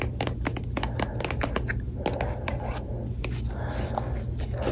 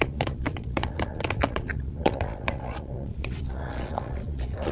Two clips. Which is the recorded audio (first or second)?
first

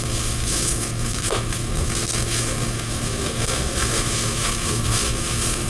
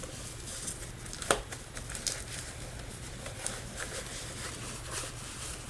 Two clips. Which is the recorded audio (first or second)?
second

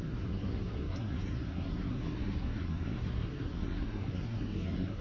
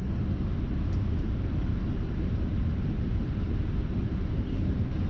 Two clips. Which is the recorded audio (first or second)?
second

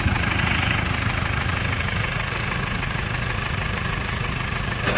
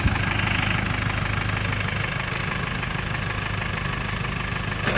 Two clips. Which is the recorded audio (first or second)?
second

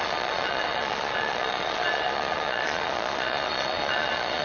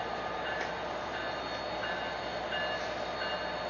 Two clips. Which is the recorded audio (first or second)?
second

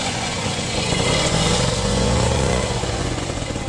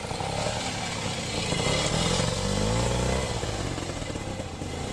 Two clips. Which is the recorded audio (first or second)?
second